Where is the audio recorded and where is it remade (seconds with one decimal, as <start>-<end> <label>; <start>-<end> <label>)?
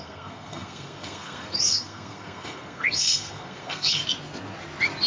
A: 0.0-4.0 remade; 4.0-5.1 recorded